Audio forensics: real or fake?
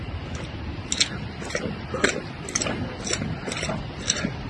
real